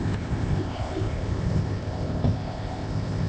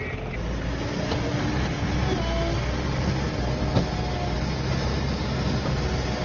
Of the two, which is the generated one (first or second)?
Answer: first